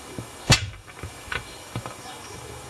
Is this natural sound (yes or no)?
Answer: no